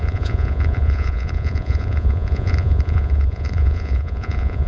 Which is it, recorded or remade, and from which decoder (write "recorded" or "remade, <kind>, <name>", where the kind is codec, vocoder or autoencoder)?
remade, vocoder, Vocos